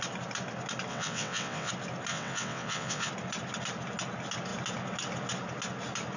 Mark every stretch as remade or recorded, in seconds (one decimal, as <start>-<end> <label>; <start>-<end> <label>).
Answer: 0.0-0.9 recorded; 0.9-1.7 remade; 1.7-2.1 recorded; 2.1-3.1 remade; 3.1-6.2 recorded